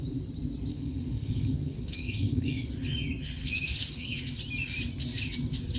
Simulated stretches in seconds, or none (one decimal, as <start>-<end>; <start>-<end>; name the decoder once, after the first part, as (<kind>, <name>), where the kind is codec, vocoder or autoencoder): 0.7-2.7 (autoencoder, DAC-VAE); 3.4-4.2